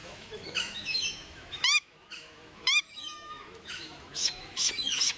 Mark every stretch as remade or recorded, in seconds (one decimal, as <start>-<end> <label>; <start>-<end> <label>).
0.0-5.2 remade